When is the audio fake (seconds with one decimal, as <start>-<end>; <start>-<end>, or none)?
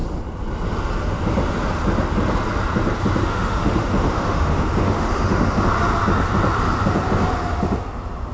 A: 3.2-5.6